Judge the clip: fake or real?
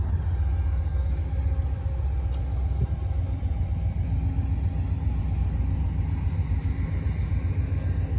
real